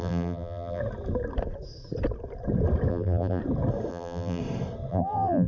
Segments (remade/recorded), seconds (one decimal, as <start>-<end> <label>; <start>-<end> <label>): 0.0-0.8 remade; 0.8-2.9 recorded; 2.9-3.4 remade; 3.4-3.9 recorded; 3.9-4.4 remade; 4.4-4.9 recorded; 4.9-5.5 remade